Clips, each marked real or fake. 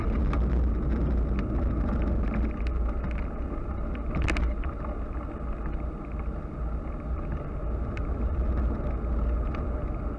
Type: real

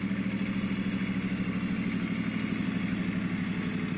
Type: real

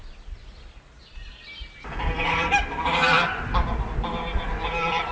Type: real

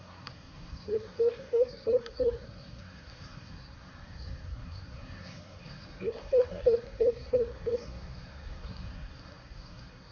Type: fake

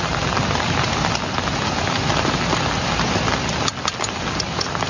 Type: real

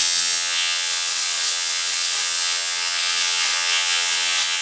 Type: fake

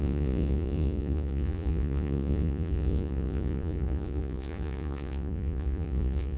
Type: fake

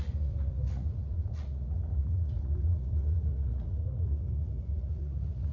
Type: fake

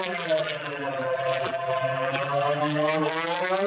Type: fake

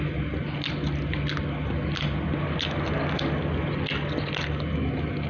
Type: real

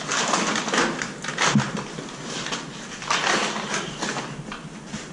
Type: real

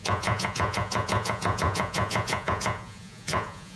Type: fake